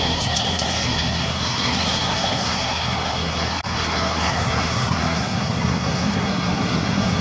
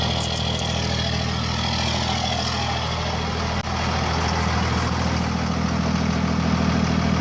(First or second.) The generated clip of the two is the first